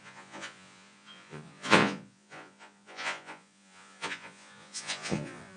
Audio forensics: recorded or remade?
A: remade